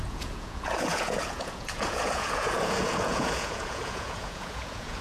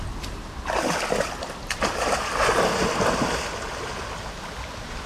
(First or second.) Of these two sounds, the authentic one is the second